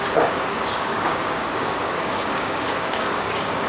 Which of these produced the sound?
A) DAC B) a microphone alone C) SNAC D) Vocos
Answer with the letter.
A